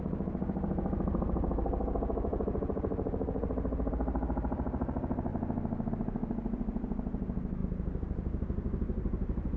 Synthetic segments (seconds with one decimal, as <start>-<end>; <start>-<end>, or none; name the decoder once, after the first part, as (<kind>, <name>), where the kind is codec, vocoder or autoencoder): 0.0-5.3 (vocoder, BigVGAN v2); 5.9-9.6